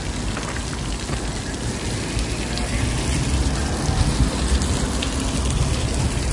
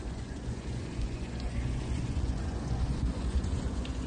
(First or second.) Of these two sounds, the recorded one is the first